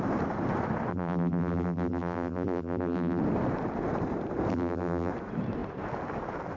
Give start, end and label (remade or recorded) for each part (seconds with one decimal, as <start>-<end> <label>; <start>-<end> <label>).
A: 0.0-0.9 recorded; 0.9-3.2 remade; 3.2-4.5 recorded; 4.5-5.1 remade; 5.1-6.6 recorded